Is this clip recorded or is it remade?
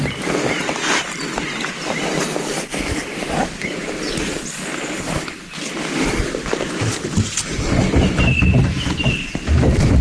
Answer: recorded